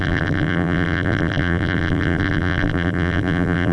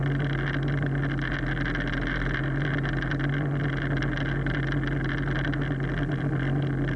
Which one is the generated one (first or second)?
first